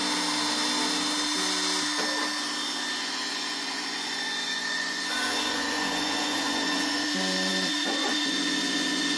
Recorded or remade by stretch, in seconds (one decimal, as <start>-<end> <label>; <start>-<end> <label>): 0.0-3.0 recorded; 3.0-9.2 remade